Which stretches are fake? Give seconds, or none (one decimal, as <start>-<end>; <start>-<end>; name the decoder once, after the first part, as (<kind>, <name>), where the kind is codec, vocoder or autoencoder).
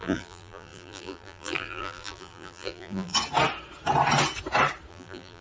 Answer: 0.0-3.1 (vocoder, BigVGAN v2); 4.9-5.4